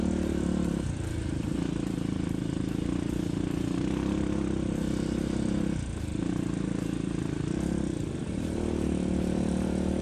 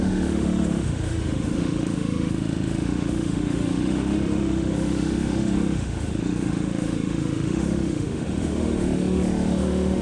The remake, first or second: second